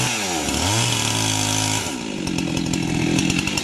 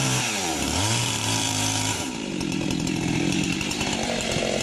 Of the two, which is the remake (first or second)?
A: second